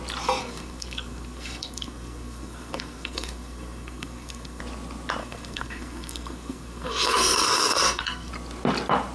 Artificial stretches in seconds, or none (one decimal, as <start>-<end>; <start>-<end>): 0.4-4.6; 5.2-8.3